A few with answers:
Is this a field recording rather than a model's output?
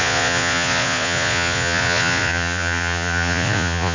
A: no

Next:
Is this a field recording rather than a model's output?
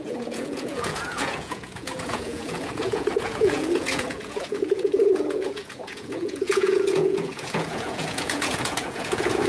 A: no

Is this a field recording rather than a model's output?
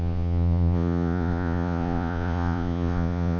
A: no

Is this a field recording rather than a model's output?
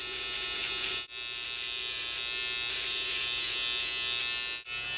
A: yes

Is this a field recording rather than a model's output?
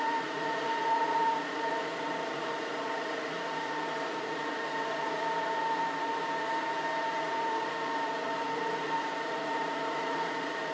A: no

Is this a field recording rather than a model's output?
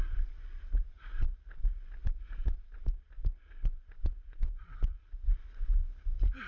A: no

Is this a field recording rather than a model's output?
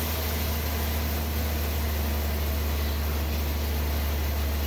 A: yes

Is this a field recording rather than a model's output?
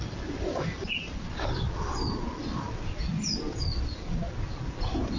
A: yes